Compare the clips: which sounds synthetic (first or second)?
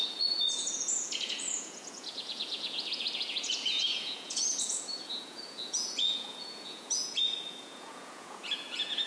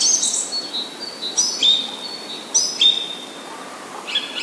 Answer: first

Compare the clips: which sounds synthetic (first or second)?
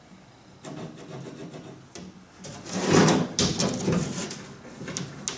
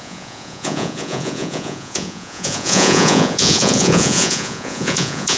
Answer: second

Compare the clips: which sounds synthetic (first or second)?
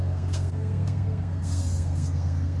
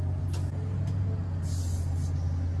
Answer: first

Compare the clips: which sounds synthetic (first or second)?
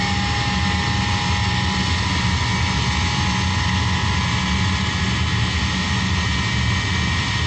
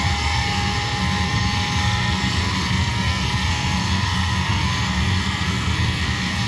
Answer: second